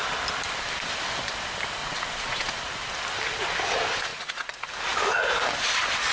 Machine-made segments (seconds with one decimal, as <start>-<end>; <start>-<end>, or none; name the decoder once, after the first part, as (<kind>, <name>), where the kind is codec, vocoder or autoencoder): 1.8-2.6 (vocoder, Vocos); 4.1-4.7